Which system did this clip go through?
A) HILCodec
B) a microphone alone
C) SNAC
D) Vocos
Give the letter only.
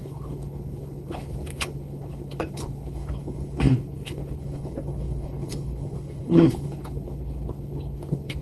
A